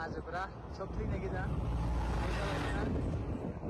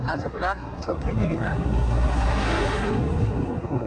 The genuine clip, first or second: first